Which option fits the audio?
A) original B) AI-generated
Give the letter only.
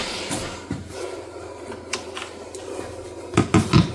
A